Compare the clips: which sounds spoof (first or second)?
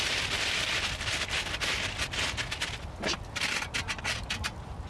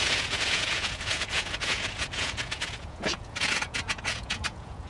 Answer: second